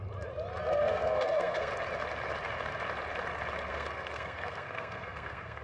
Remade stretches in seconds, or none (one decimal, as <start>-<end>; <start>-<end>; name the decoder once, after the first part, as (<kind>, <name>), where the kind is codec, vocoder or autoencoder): 0.7-1.7 (codec, SNAC); 3.7-5.6